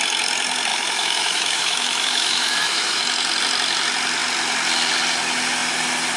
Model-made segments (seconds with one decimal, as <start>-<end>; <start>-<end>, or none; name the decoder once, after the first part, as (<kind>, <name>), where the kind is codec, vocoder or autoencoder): 0.7-3.0 (autoencoder, DAC-VAE)